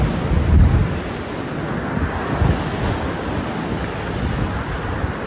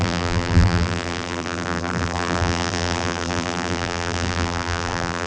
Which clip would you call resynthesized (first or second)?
second